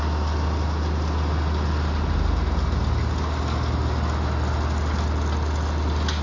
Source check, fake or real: real